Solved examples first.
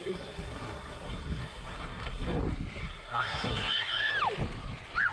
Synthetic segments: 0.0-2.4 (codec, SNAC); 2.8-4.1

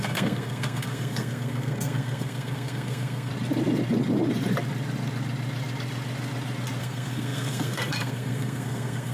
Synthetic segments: 0.0-3.3 (codec, SNAC); 6.8-9.1